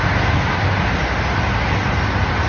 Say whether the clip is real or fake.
real